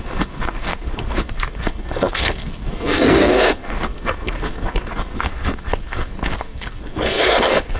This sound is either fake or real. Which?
fake